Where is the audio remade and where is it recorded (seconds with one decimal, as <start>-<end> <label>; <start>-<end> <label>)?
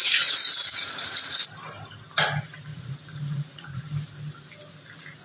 0.0-1.4 remade; 1.4-2.7 recorded; 2.7-3.8 remade; 3.8-5.2 recorded